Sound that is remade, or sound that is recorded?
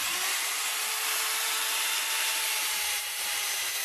remade